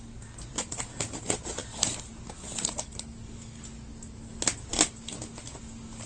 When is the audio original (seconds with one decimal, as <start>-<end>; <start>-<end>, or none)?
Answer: 0.0-6.1

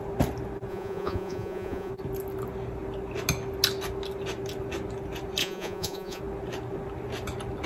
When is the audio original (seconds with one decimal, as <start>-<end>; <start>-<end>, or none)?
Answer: 0.0-0.7; 1.9-5.4; 6.2-7.7

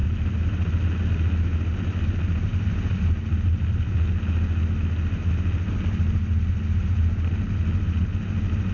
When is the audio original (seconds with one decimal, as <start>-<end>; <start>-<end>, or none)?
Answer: 0.0-8.7

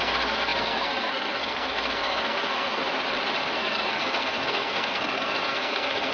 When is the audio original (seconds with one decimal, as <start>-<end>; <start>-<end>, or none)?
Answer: 2.8-3.5

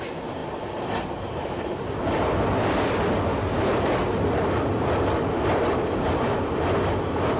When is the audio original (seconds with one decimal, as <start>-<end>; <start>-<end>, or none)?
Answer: 0.0-7.4